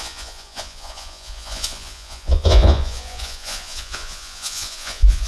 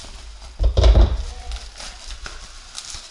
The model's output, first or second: first